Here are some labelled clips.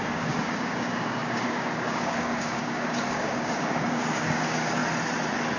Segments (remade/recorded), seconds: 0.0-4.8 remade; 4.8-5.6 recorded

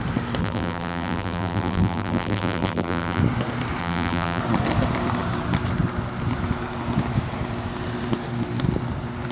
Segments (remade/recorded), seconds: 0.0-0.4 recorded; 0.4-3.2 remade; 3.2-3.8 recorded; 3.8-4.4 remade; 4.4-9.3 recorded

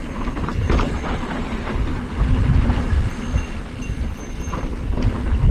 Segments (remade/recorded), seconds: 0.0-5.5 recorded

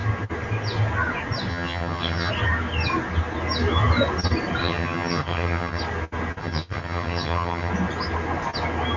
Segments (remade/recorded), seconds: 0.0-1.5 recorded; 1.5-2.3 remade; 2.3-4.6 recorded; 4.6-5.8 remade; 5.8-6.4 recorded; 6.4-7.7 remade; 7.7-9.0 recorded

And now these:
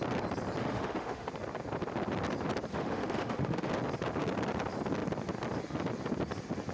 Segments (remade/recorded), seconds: 0.0-0.6 recorded; 0.6-1.3 remade; 1.3-2.7 recorded; 2.7-3.7 remade; 3.7-6.7 recorded